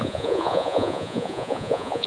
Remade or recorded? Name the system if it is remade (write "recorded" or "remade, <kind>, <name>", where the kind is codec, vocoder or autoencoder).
remade, vocoder, Vocos